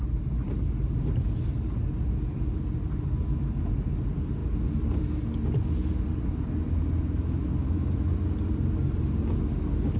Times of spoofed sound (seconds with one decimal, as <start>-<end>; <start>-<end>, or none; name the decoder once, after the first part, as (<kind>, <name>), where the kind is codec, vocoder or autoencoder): none